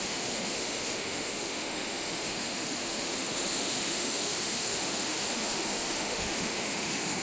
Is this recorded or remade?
remade